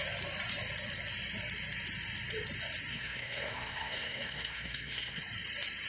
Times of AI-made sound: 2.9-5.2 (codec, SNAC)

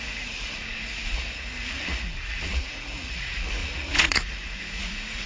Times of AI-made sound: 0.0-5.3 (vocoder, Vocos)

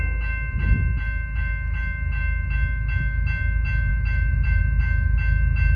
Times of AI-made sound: 3.9-4.6 (vocoder, BigVGAN v2)

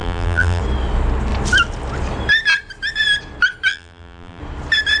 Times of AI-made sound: 0.0-0.6 (vocoder, BigVGAN v2); 3.7-4.4